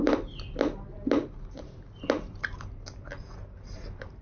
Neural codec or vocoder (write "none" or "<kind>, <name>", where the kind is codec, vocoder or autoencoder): none